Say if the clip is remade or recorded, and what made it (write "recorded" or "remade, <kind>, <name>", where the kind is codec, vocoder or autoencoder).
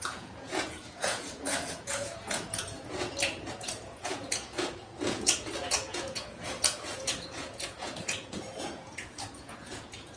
remade, vocoder, Vocos